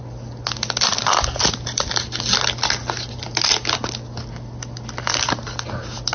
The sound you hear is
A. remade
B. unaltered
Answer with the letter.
B